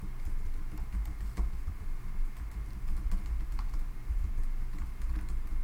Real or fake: real